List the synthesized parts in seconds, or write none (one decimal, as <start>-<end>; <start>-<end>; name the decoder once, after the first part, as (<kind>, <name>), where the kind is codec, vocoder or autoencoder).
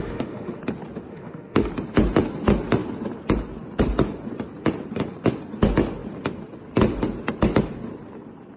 0.0-0.6 (autoencoder, DAC-VAE); 1.1-1.7